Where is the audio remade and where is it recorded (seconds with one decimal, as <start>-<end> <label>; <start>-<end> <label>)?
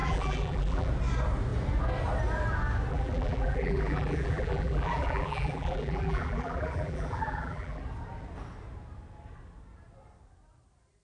0.0-0.9 remade; 0.9-2.9 recorded; 2.9-7.8 remade; 7.8-11.0 recorded